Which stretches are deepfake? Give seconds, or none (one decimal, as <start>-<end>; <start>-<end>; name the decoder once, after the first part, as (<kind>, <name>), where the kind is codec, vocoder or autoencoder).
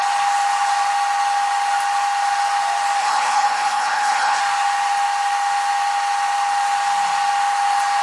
3.0-4.4 (codec, HILCodec)